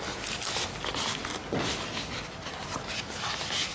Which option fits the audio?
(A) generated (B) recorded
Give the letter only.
B